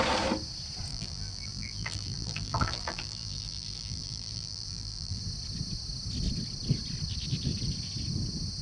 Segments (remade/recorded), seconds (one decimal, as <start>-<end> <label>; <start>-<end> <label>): 0.0-0.9 recorded; 0.9-5.2 remade; 5.2-8.6 recorded